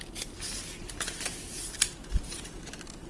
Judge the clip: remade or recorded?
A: recorded